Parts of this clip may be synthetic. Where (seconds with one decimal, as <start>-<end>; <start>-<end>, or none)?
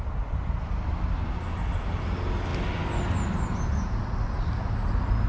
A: none